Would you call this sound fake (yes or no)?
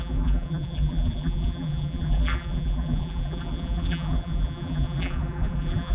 yes